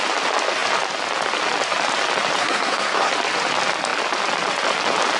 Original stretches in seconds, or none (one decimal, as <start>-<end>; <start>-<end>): 0.0-2.4; 3.1-5.2